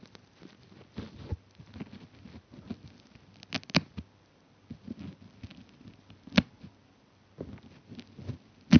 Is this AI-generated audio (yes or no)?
no